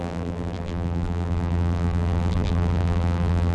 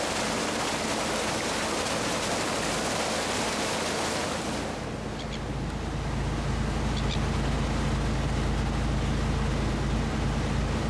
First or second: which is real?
second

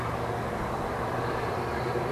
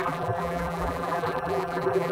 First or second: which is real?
first